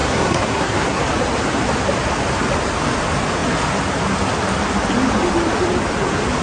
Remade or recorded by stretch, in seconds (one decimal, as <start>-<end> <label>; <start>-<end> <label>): 0.0-1.0 remade; 1.0-6.4 recorded